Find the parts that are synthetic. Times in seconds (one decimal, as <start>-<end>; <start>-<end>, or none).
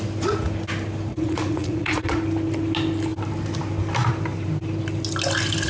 1.1-2.2